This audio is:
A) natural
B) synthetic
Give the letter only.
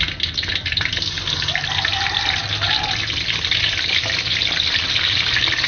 A